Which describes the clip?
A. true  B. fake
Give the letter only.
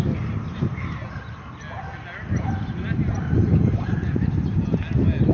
A